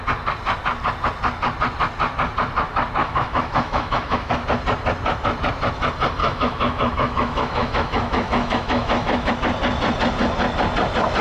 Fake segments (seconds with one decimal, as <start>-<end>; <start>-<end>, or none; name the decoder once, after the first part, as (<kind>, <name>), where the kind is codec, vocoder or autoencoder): 3.0-4.3 (autoencoder, DAC-VAE); 6.2-9.3